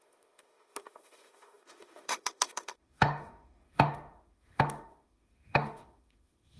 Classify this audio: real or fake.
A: fake